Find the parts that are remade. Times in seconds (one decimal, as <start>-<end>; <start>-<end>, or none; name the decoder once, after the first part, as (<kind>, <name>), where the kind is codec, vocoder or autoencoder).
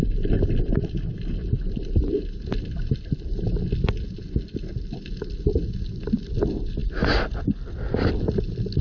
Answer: none